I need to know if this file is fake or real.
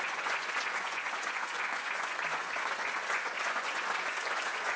fake